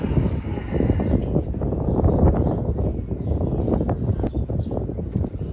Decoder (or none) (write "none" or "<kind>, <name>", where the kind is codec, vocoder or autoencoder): none